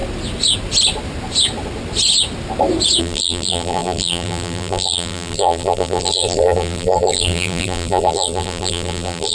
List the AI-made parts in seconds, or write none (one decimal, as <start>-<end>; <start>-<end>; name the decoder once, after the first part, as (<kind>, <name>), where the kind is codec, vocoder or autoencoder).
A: 3.0-9.3 (vocoder, BigVGAN v2)

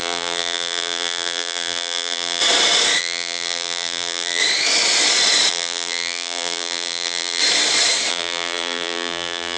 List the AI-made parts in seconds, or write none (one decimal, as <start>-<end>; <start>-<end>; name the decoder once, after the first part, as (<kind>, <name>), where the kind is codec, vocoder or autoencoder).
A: 0.0-2.4 (vocoder, BigVGAN v2); 3.0-4.4; 5.5-7.4; 8.1-9.6